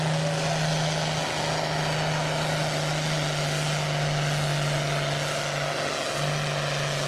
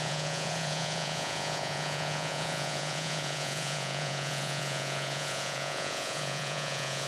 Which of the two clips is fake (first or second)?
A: second